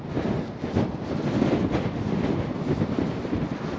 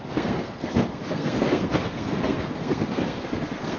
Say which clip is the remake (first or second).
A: second